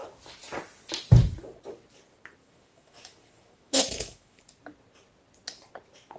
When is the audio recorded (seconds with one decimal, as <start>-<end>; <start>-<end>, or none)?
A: 0.0-2.4; 4.4-6.2